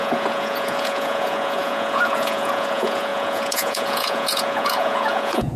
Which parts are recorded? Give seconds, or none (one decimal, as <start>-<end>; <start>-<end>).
none